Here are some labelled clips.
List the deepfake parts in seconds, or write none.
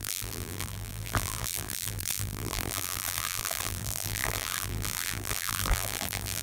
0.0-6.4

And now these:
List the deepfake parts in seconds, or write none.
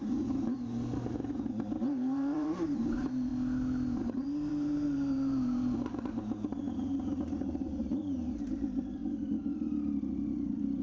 0.0-3.3; 4.5-9.0; 10.1-10.8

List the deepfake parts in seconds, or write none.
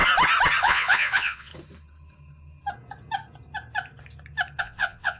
0.6-1.5; 4.6-5.2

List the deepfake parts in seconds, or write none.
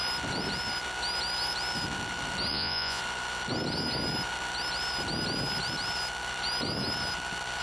2.5-3.0